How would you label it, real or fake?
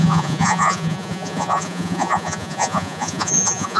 fake